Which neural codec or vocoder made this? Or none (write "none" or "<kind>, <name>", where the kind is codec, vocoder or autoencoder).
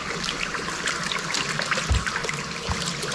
none